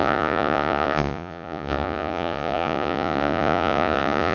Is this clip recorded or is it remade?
remade